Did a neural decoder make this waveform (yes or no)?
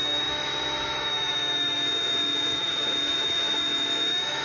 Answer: yes